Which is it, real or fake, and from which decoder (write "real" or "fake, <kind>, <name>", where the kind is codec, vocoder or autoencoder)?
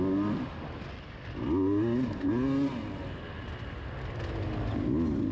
real